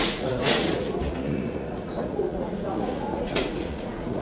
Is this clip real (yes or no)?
no